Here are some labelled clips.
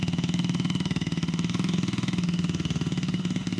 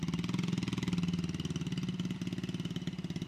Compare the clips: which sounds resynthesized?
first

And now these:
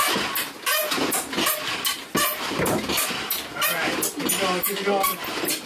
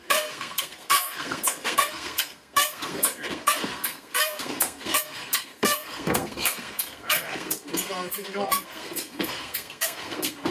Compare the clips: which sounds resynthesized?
second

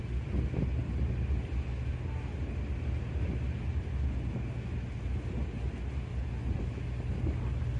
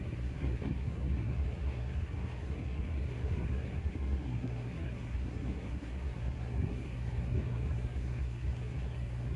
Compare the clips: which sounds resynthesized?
second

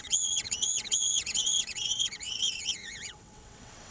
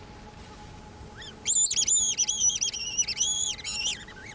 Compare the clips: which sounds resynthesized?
first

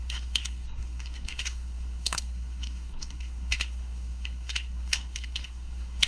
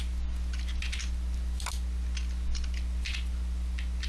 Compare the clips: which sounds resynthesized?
first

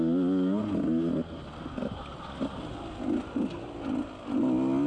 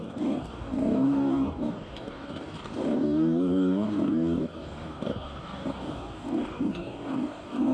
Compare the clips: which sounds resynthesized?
second